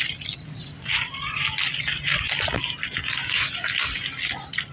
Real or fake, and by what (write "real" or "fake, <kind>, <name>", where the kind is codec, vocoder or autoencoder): real